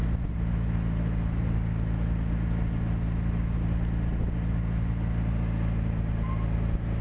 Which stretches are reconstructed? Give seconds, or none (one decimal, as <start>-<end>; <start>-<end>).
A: 0.0-0.5